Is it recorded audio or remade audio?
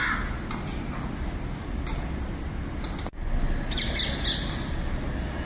recorded